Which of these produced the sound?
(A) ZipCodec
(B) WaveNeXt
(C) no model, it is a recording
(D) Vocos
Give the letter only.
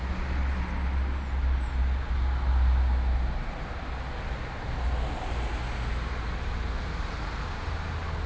C